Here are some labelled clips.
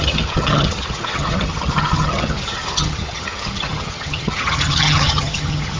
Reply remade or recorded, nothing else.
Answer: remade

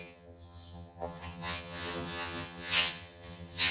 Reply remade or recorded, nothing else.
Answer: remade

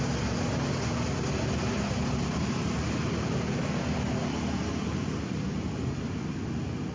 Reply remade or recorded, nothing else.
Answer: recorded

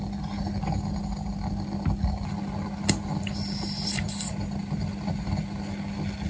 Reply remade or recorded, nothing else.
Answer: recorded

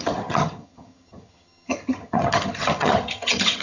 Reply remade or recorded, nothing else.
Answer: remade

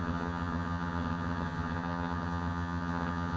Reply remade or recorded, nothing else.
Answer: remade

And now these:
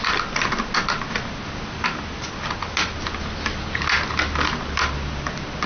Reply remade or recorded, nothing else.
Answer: recorded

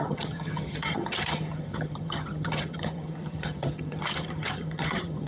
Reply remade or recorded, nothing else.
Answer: remade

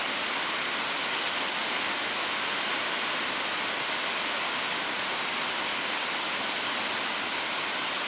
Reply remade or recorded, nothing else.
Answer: recorded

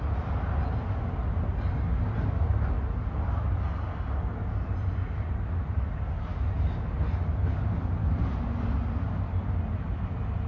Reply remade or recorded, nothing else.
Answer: recorded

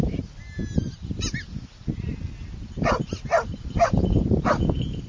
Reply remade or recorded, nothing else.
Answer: recorded